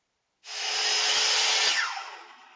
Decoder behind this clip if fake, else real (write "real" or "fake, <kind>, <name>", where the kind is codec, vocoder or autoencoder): real